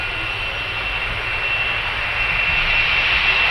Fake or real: real